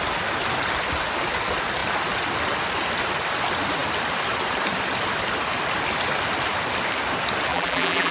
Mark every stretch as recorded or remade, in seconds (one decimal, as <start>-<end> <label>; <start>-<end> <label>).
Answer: 0.0-7.5 recorded; 7.5-8.1 remade